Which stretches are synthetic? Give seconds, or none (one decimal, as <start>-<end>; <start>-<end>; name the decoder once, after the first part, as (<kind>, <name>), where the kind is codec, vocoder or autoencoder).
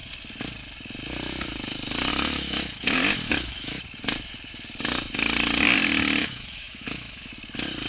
2.1-3.8 (autoencoder, DAC-VAE); 6.2-7.3